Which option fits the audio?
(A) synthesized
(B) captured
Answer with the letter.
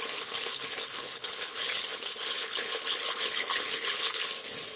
A